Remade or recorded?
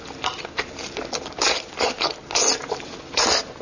recorded